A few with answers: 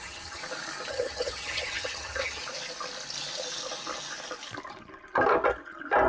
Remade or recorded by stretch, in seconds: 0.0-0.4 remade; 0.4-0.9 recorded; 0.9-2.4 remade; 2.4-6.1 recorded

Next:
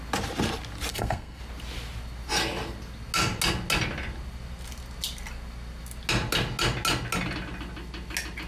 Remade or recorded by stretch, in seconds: 0.0-0.9 recorded; 0.9-1.4 remade; 1.4-8.5 recorded

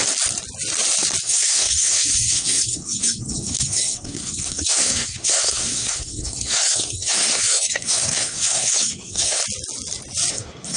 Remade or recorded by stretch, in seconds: 0.0-1.2 recorded; 1.2-9.4 remade; 9.4-10.3 recorded; 10.3-10.8 remade

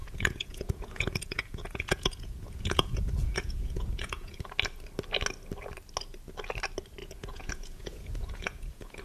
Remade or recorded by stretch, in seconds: 0.0-4.4 remade; 4.4-7.0 recorded; 7.0-9.0 remade

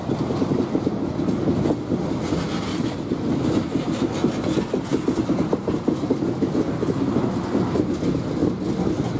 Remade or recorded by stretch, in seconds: 0.0-2.7 recorded; 2.7-3.8 remade; 3.8-4.9 recorded; 4.9-5.5 remade; 5.5-8.4 recorded; 8.4-9.2 remade

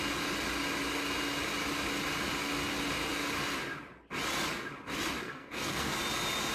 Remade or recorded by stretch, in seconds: 0.0-5.2 recorded; 5.2-5.9 remade; 5.9-6.5 recorded

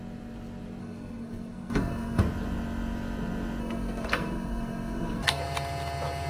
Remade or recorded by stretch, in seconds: 0.0-0.8 recorded; 0.8-2.2 remade; 2.2-3.6 recorded; 3.6-5.4 remade; 5.4-6.3 recorded

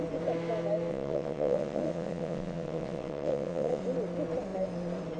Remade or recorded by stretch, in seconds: 0.0-0.9 recorded; 0.9-3.8 remade; 3.8-5.2 recorded